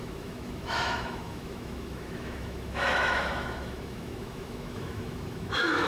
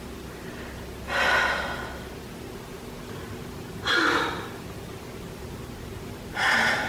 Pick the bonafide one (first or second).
second